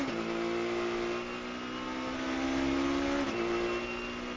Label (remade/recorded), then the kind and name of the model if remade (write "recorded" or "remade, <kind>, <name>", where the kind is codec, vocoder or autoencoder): recorded